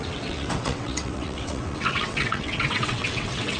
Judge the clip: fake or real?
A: fake